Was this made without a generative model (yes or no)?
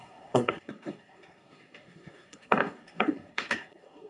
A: no